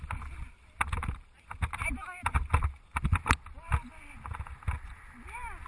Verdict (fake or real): real